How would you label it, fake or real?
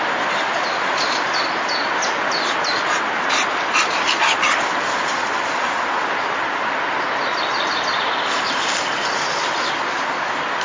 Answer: real